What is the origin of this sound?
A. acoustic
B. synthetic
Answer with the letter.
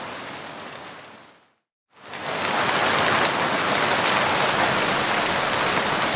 A